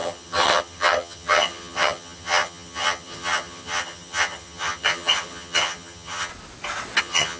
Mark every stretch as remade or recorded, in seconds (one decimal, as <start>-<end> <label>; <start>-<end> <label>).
0.0-6.3 remade; 6.3-7.0 recorded; 7.0-7.4 remade